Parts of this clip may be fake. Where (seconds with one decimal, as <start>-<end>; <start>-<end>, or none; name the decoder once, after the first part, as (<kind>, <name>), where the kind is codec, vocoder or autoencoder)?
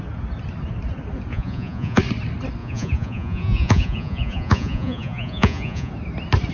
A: 1.3-2.0 (vocoder, Vocos); 2.6-5.9